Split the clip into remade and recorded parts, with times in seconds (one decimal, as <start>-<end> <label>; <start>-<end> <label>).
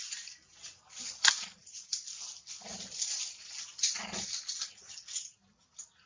0.0-6.1 recorded